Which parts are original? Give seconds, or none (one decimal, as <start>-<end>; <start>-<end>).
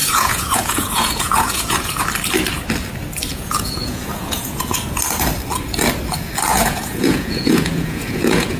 1.9-3.3; 4.6-6.5